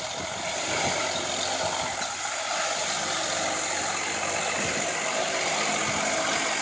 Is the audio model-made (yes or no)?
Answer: no